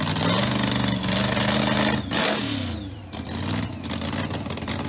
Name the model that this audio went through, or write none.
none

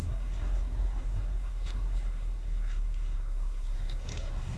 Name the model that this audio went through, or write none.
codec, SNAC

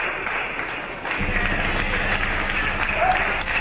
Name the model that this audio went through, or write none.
none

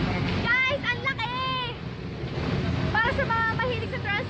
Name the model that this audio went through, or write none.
none